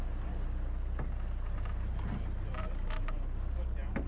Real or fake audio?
real